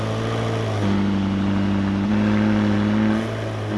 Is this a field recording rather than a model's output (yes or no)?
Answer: yes